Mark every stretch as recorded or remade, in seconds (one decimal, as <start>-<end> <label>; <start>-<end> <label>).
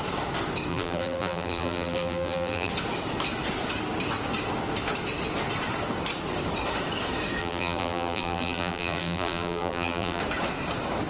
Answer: 0.0-0.7 recorded; 0.7-2.7 remade; 2.7-7.4 recorded; 7.4-10.2 remade; 10.2-11.1 recorded